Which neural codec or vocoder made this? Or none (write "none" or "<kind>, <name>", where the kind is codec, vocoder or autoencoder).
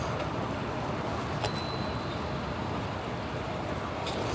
none